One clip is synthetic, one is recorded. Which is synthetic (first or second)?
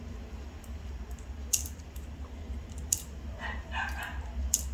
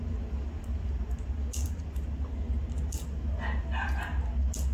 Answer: first